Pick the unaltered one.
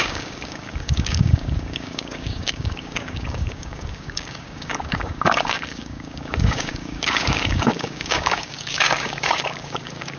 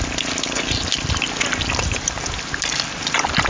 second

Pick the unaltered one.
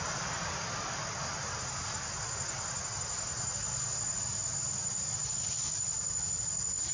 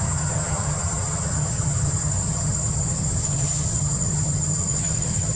first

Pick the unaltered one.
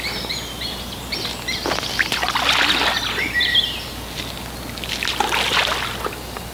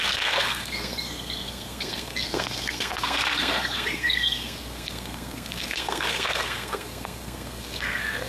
first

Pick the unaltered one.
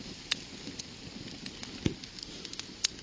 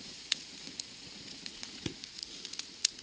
first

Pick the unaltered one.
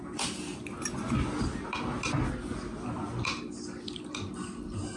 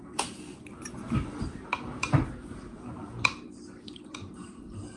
first